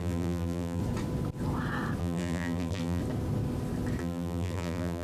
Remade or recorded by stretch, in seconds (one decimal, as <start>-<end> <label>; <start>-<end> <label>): 0.0-0.8 remade; 0.8-2.0 recorded; 2.0-3.0 remade; 3.0-4.0 recorded; 4.0-5.0 remade